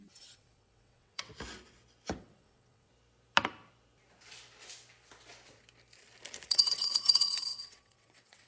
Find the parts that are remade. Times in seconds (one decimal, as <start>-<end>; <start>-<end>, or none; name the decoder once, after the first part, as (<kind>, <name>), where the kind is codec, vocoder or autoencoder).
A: 0.0-1.3 (vocoder, WaveNeXt); 2.2-2.9; 6.5-8.5